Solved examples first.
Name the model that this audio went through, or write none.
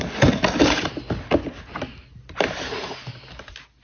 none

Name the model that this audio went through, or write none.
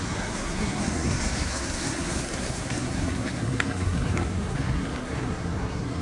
codec, SNAC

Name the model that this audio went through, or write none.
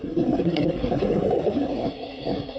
codec, SNAC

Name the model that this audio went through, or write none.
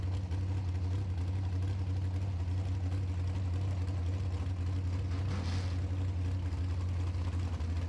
none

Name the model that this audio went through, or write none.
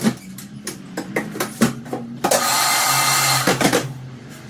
none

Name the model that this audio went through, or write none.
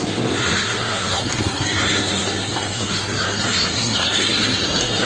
codec, SNAC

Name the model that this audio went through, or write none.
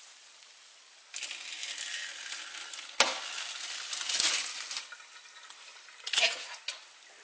none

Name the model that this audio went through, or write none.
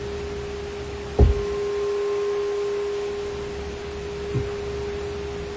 none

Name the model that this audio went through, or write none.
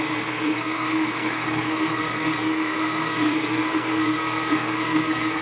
codec, SNAC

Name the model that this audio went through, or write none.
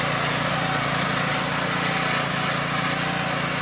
none